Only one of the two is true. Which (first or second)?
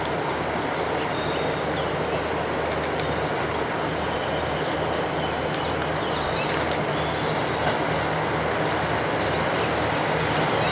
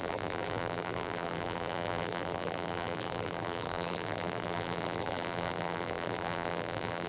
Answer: first